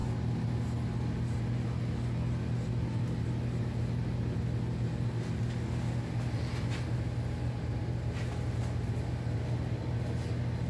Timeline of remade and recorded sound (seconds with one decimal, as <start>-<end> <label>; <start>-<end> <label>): 0.0-10.7 recorded